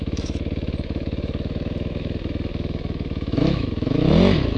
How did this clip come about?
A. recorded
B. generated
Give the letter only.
B